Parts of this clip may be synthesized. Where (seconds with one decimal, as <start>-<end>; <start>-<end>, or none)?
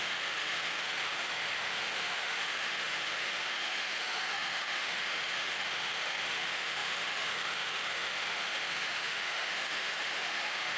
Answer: 0.0-10.8